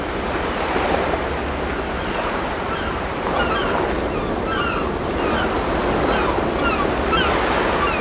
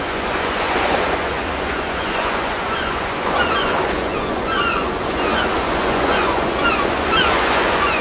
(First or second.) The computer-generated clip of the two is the second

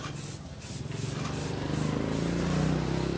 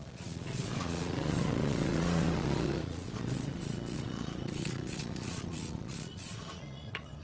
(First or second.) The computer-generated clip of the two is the second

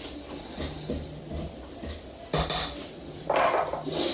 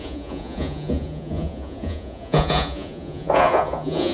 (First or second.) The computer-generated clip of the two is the second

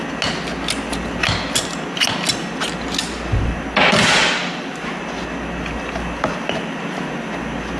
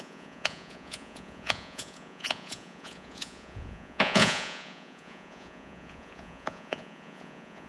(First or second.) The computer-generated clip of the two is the second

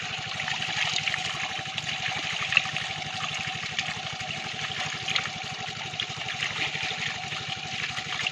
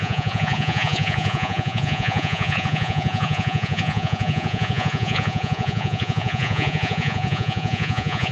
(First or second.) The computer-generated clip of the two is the second